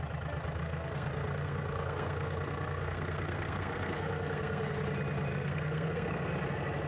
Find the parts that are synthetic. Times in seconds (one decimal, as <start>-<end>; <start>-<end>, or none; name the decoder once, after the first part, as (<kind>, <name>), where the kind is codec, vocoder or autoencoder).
0.6-4.7 (codec, SNAC); 5.3-6.3